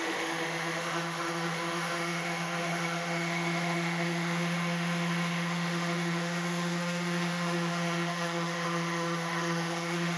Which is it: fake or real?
fake